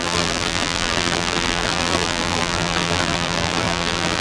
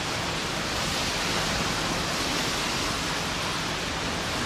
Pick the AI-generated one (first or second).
first